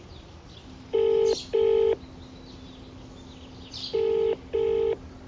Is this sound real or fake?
real